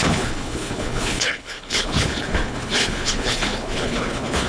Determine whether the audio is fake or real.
fake